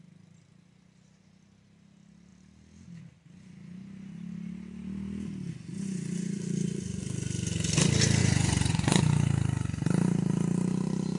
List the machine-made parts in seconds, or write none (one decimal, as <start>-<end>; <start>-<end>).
8.2-9.0